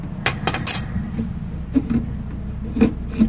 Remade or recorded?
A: remade